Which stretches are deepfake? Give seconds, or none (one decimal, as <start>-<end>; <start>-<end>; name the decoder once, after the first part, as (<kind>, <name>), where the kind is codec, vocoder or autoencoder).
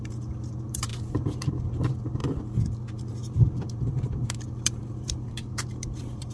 0.0-2.2 (vocoder, BigVGAN v2); 3.1-6.3